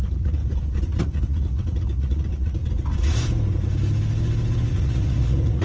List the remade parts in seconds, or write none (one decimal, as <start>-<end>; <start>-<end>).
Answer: 0.0-0.4; 1.0-2.6; 4.7-5.6